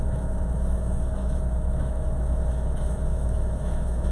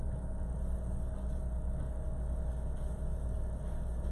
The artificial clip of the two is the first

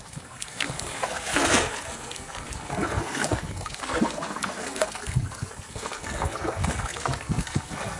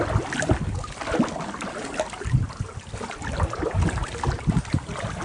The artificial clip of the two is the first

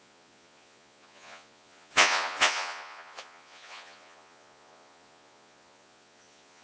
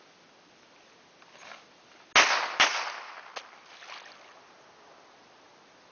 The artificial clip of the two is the first